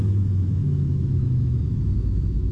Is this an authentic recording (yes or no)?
no